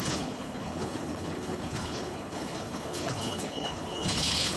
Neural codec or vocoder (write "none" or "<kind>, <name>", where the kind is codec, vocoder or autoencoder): codec, HILCodec